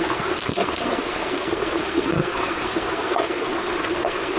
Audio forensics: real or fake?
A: fake